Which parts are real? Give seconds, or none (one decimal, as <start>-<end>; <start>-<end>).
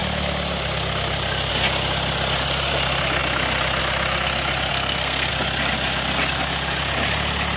0.0-4.7; 5.3-7.6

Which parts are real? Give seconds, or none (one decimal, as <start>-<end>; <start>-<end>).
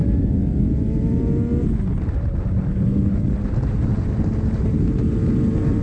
0.0-5.8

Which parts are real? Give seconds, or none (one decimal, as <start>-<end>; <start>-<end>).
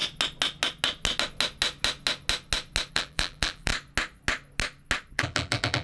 0.0-2.9; 3.7-5.1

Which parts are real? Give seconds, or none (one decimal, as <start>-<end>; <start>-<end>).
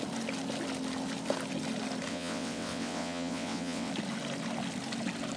0.0-2.1; 3.9-5.4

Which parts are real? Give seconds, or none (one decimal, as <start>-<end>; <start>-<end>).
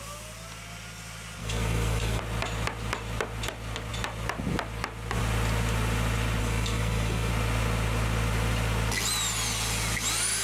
0.0-1.4; 2.2-6.4; 7.3-10.4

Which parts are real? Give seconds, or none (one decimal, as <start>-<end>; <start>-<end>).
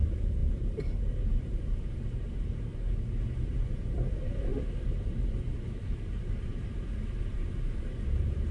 2.7-3.7; 4.5-5.8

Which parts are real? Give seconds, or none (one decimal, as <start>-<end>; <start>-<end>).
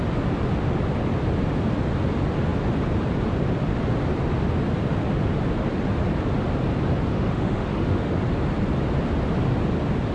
0.0-7.1; 8.1-10.1